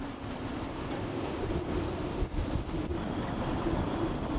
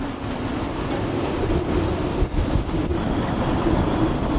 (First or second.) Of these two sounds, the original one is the second